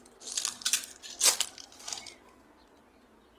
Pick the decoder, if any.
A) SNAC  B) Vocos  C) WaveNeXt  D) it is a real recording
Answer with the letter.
D